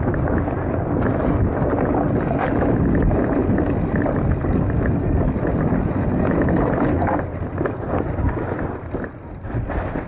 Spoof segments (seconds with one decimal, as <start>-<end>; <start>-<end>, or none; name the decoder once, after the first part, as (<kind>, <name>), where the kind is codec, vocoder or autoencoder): none